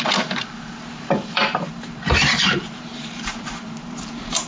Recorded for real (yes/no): no